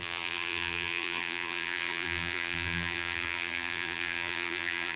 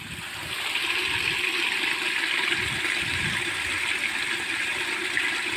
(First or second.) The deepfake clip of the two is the first